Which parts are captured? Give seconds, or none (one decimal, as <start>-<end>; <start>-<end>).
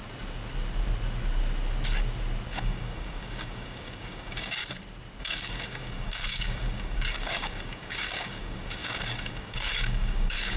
0.0-2.5; 4.6-5.2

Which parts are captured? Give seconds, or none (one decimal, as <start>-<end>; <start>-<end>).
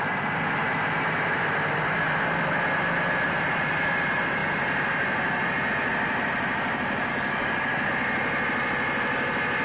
0.0-7.1; 7.9-9.6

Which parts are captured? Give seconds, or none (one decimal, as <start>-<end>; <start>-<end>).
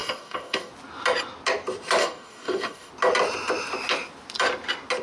0.7-2.0; 2.9-5.0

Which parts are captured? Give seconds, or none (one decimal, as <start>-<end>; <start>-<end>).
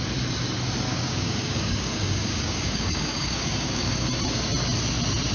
0.0-0.9; 4.1-5.3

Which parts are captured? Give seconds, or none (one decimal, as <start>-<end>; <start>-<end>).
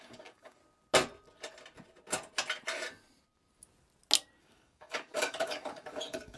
0.6-4.4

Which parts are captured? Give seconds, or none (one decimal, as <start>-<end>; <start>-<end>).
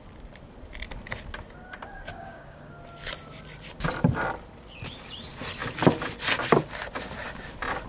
0.0-2.1; 2.7-7.9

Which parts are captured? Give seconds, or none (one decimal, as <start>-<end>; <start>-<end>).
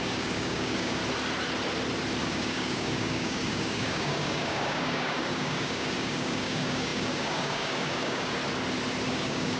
1.0-2.2; 8.4-9.1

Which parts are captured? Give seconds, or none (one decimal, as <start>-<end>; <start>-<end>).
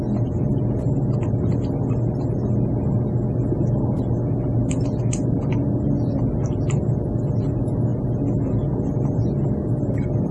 0.0-10.3